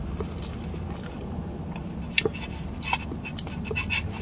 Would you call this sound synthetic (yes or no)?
no